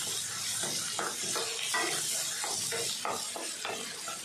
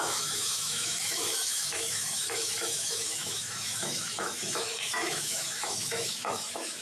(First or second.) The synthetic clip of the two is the second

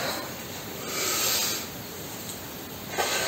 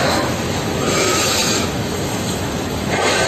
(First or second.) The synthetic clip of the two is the second